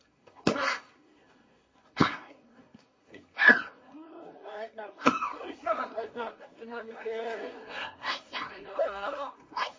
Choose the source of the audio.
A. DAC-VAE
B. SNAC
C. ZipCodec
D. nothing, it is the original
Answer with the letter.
B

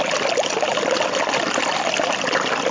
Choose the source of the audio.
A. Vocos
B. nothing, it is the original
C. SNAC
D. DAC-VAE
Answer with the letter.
B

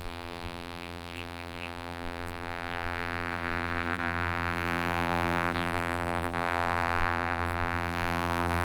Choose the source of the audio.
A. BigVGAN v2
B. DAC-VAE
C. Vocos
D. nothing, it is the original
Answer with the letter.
A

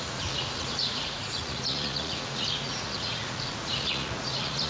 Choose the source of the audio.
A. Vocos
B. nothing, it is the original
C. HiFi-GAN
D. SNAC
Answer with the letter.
A